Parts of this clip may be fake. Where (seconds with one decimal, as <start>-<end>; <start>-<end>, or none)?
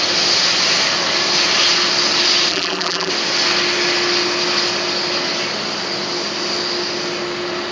2.5-3.1